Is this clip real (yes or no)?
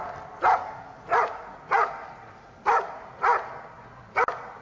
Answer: yes